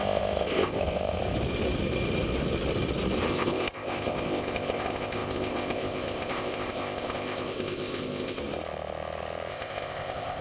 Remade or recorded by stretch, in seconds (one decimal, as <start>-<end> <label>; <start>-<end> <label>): 0.0-1.2 remade; 1.2-3.3 recorded; 3.3-8.4 remade; 8.4-9.5 recorded; 9.5-10.4 remade